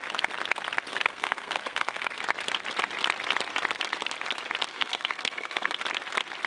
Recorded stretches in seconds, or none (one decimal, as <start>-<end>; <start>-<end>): 0.0-0.9; 2.1-4.7; 5.8-6.5